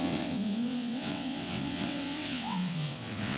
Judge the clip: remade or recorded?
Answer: remade